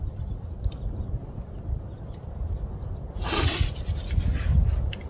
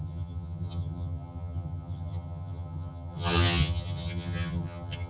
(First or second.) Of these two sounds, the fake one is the second